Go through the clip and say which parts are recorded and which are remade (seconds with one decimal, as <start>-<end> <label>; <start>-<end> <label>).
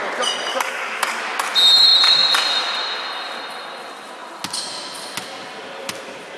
0.0-0.5 recorded; 0.5-1.2 remade; 1.2-6.4 recorded